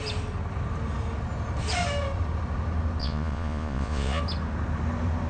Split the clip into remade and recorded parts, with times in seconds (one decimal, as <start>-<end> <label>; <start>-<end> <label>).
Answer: 0.0-3.0 recorded; 3.0-4.2 remade; 4.2-5.3 recorded